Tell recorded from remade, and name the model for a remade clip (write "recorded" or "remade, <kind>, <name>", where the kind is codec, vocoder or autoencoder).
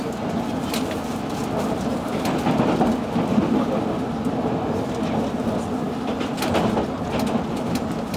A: recorded